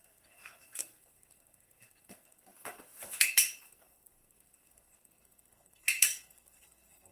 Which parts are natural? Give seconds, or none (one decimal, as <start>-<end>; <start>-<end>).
none